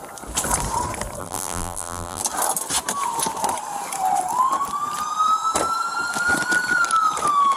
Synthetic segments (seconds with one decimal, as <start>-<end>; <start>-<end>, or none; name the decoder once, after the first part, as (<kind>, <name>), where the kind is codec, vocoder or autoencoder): 1.2-2.2 (vocoder, BigVGAN v2)

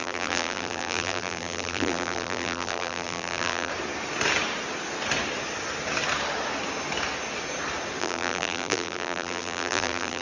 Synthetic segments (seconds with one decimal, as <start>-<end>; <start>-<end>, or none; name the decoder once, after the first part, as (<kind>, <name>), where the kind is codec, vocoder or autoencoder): 0.0-3.7 (vocoder, BigVGAN v2); 8.0-10.2